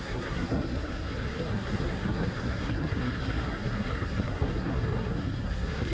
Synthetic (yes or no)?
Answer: yes